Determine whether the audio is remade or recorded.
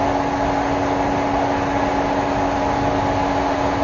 recorded